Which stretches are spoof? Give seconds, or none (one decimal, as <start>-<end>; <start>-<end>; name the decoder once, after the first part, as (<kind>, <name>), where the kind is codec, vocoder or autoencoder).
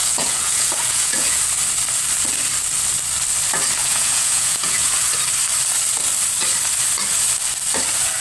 0.0-1.4 (vocoder, Vocos); 3.8-5.1